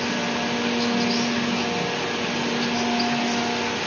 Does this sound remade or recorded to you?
recorded